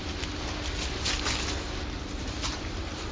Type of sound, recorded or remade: recorded